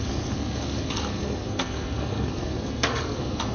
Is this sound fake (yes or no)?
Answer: yes